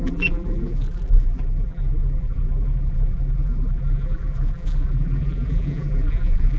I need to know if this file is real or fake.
fake